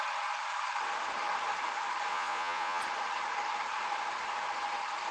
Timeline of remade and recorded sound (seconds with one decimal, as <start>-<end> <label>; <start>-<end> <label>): 0.0-2.1 recorded; 2.1-2.8 remade; 2.8-5.1 recorded